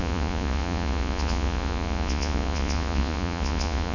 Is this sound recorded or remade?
remade